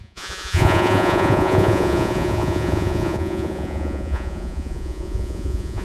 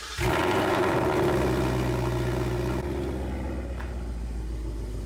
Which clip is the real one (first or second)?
second